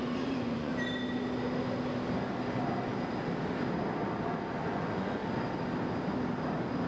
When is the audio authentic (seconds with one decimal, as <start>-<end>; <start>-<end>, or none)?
0.7-4.6; 5.2-6.9